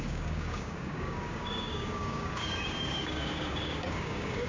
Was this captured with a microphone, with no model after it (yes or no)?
no